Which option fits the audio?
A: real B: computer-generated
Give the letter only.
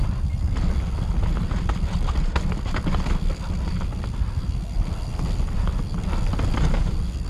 A